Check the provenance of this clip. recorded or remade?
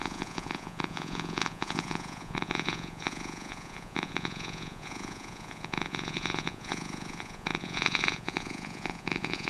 remade